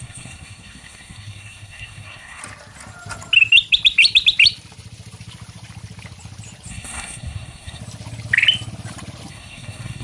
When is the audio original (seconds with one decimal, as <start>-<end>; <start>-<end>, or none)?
2.4-6.7; 7.8-9.3